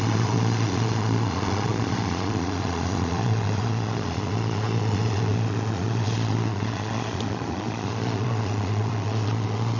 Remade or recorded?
remade